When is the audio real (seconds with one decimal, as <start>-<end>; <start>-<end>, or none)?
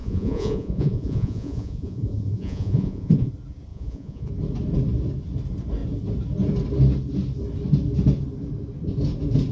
3.3-3.7; 4.3-9.5